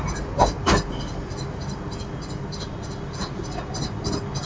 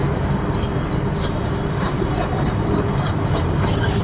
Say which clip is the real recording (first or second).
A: first